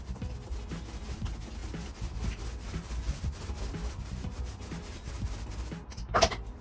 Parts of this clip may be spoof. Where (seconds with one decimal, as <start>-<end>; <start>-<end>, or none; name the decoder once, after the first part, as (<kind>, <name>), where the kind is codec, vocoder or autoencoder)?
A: none